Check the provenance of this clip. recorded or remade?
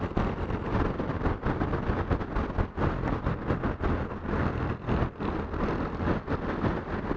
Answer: recorded